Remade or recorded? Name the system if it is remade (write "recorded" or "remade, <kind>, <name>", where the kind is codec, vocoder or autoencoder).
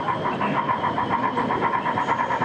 recorded